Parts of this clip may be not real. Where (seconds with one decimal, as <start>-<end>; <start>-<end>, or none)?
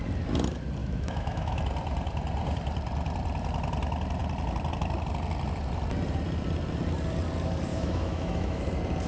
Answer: 0.8-1.6; 7.7-8.6